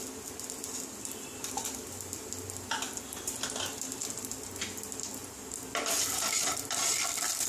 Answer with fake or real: real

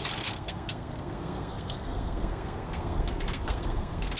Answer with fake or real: fake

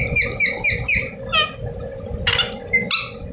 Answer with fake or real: real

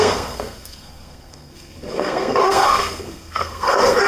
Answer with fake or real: fake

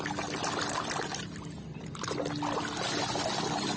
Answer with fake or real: real